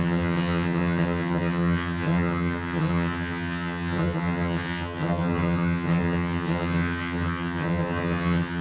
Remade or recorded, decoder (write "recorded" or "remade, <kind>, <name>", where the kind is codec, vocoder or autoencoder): remade, vocoder, HiFi-GAN